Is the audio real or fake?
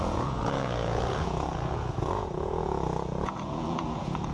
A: fake